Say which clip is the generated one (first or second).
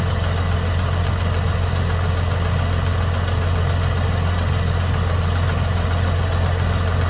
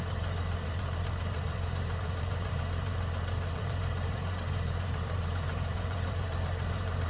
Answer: second